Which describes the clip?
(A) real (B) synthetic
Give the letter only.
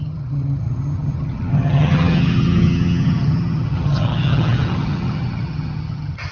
B